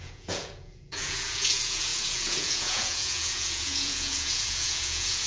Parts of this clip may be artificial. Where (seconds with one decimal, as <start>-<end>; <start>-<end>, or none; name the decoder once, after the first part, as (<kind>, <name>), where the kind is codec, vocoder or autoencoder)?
0.0-5.3 (vocoder, Vocos)